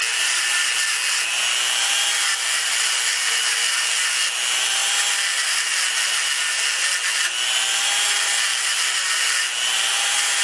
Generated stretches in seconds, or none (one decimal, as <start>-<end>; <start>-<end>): none